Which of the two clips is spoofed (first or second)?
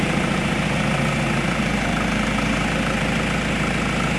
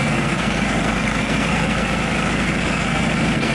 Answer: second